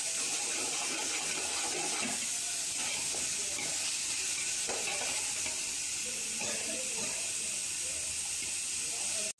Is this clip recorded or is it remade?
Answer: recorded